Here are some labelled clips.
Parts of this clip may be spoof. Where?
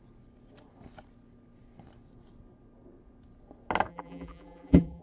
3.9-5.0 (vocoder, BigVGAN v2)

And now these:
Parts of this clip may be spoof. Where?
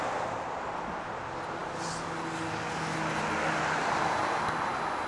none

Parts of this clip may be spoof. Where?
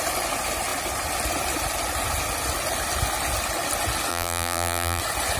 4.1-5.0 (vocoder, BigVGAN v2)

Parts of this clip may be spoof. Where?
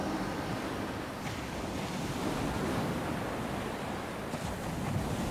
0.0-3.0 (vocoder, BigVGAN v2); 4.2-4.7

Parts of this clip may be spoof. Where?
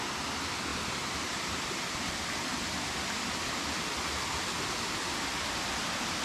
0.7-1.5 (vocoder, BigVGAN v2)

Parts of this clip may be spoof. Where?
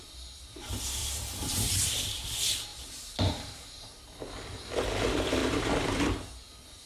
1.0-1.7 (vocoder, BigVGAN v2); 2.7-4.7; 5.4-6.0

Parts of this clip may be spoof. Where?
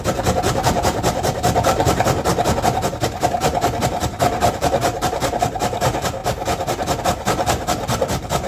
0.0-2.3 (vocoder, BigVGAN v2); 3.9-6.2; 7.0-8.5